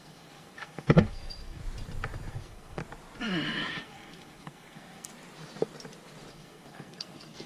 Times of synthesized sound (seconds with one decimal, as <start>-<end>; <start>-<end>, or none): 0.0-1.6; 2.3-2.8; 3.7-5.1; 6.3-7.5